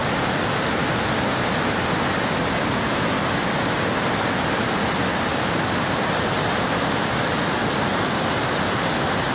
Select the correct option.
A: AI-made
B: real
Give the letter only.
B